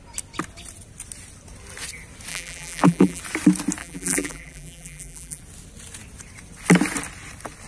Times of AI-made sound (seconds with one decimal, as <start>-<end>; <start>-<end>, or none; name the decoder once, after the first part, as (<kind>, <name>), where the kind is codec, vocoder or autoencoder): 2.3-3.2 (vocoder, BigVGAN v2); 3.8-5.4